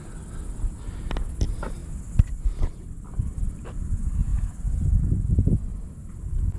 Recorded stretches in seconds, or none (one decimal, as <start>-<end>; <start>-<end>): 0.0-6.6